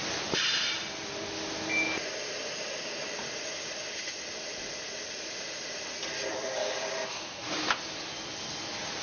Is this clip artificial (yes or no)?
no